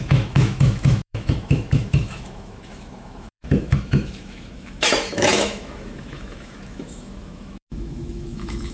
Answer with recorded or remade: remade